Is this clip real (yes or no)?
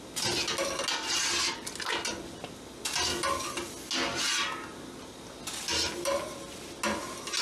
yes